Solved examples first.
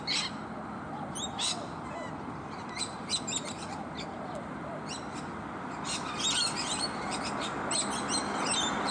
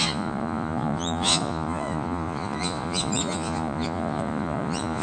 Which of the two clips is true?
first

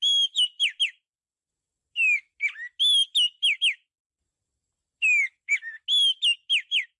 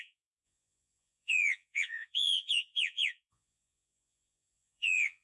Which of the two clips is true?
first